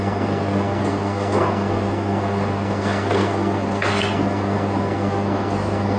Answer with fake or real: fake